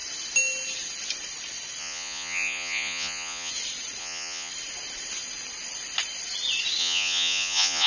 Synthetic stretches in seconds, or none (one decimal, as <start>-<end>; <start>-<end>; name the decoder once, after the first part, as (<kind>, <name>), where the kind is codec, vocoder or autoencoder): 1.8-3.5 (vocoder, Vocos); 4.0-4.5; 6.8-7.9

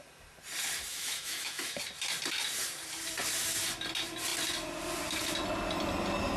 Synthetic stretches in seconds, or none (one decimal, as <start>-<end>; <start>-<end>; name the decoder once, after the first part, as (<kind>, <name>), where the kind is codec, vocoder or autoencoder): 0.9-1.8 (autoencoder, DAC-VAE)

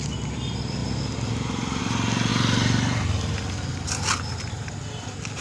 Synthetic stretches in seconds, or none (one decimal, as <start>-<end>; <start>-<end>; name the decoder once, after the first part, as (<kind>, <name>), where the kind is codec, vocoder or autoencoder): 0.8-1.8 (vocoder, BigVGAN v2)

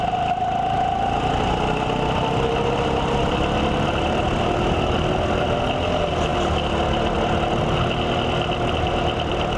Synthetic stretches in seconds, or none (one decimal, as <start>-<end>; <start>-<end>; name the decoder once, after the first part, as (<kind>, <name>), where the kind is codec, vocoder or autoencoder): none

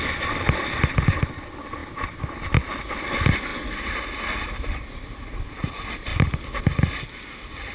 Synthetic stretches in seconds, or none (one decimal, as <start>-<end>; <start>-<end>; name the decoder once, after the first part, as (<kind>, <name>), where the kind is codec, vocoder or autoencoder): none

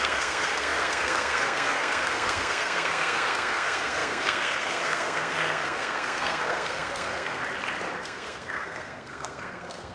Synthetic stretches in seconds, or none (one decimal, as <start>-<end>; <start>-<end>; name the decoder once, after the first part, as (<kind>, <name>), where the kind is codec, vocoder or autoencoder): 0.0-7.4 (codec, SNAC); 8.0-9.9